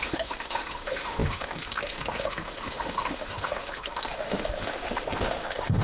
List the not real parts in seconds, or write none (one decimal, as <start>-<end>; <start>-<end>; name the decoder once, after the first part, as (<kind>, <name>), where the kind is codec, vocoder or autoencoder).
0.0-5.8 (autoencoder, DAC-VAE)